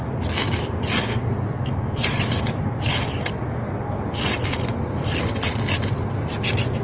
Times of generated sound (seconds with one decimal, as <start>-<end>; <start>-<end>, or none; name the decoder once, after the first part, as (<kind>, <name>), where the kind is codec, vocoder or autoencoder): 2.0-2.9 (vocoder, BigVGAN v2)